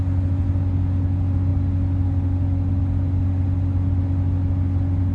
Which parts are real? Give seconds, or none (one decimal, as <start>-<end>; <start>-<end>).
0.0-5.1